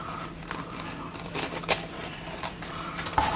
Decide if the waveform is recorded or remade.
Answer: recorded